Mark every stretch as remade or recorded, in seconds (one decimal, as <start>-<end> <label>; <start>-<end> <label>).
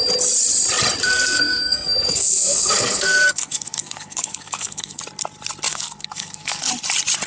0.0-1.0 recorded; 1.0-5.0 remade; 5.0-5.7 recorded; 5.7-6.7 remade; 6.7-7.3 recorded